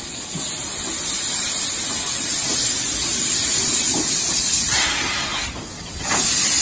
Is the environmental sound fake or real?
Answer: real